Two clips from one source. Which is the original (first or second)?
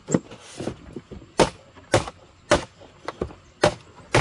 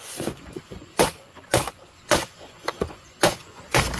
first